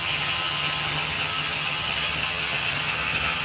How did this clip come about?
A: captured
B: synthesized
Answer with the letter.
B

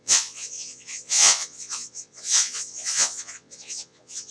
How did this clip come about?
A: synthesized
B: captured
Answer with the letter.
A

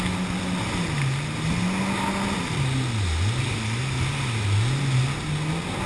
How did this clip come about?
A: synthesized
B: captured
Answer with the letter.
B